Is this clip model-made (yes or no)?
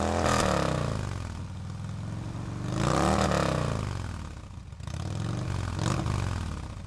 no